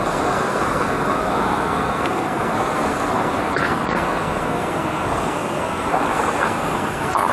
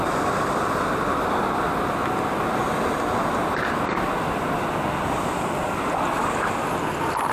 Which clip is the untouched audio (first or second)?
second